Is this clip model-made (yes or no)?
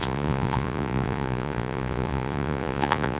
yes